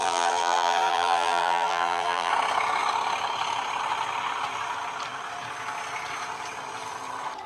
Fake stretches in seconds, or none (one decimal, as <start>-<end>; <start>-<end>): 0.0-2.3